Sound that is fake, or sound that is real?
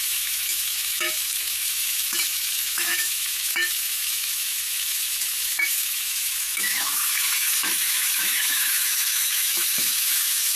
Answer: fake